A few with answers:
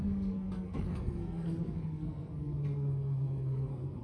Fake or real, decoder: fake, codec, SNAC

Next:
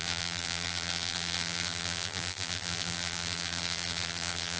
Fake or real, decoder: fake, vocoder, BigVGAN v2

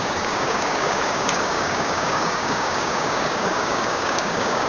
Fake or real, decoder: fake, codec, DAC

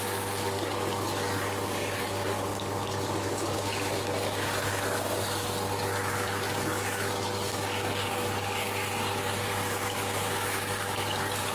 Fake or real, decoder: fake, codec, DAC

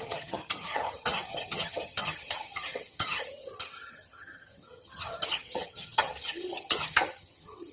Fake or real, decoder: fake, vocoder, HiFi-GAN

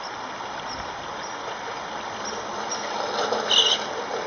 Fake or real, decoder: real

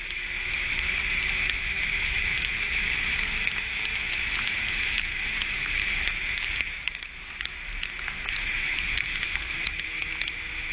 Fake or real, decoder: fake, autoencoder, DAC-VAE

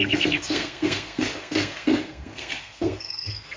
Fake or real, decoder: fake, codec, SNAC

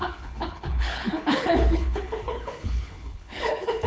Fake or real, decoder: fake, codec, HILCodec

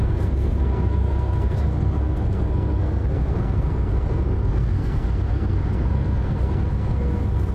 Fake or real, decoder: fake, codec, SNAC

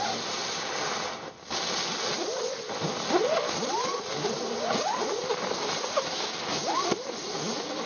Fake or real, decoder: real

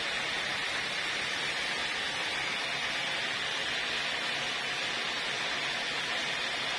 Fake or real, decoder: real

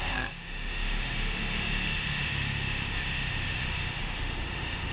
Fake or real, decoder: fake, autoencoder, DAC-VAE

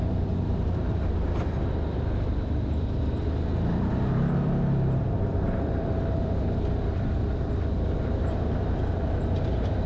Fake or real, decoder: fake, vocoder, BigVGAN v2